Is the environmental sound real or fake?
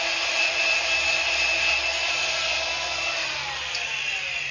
real